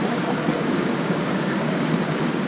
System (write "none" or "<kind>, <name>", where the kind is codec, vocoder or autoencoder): codec, DAC